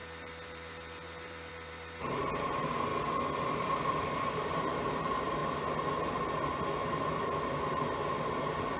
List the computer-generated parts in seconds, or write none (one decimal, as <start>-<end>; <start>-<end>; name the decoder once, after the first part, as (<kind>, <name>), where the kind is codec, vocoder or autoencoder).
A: 0.0-2.9 (vocoder, BigVGAN v2); 4.4-5.4; 8.1-8.8